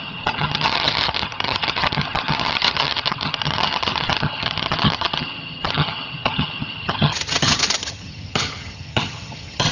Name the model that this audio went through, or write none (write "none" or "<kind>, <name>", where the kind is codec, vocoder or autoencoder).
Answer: vocoder, HiFi-GAN